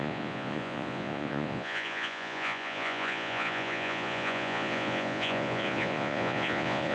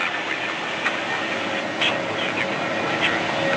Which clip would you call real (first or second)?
second